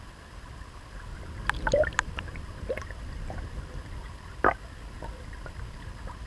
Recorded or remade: remade